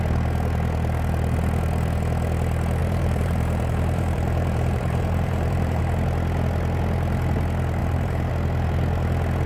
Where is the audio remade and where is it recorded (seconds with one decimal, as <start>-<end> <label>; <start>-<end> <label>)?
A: 0.0-2.8 recorded; 2.8-5.8 remade; 5.8-7.8 recorded; 7.8-8.3 remade; 8.3-9.5 recorded